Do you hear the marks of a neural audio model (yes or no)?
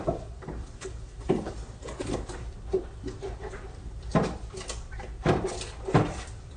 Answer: yes